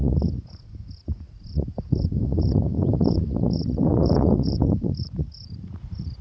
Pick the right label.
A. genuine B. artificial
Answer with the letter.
B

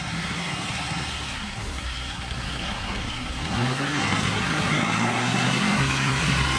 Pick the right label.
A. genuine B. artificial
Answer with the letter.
B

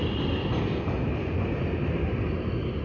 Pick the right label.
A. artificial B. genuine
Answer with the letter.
B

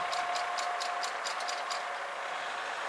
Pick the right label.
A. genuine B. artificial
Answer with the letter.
A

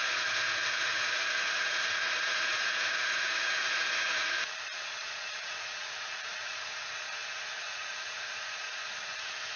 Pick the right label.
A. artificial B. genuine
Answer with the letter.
A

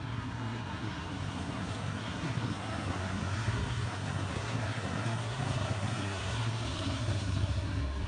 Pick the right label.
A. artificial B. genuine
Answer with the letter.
A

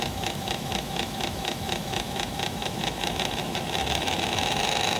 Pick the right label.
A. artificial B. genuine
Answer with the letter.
A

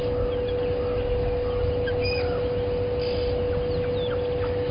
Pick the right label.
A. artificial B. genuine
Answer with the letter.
B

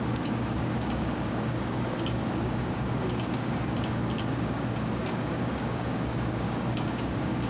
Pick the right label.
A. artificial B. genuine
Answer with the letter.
A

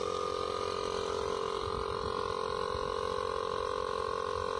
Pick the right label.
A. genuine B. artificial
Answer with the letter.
A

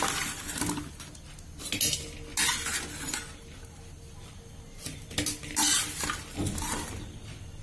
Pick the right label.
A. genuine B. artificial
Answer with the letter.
A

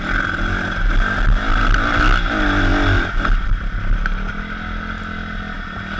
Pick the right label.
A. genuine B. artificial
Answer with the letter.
A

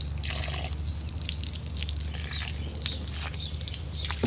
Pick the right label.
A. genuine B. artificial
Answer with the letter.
A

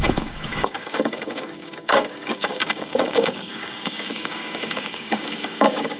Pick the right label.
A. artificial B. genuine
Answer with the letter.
A